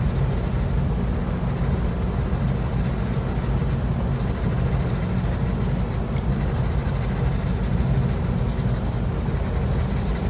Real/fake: real